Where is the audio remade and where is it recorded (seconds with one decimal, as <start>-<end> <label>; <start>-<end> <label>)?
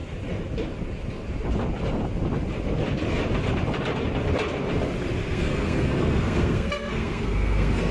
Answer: 0.0-5.2 recorded; 5.2-7.9 remade